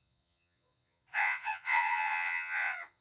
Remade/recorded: remade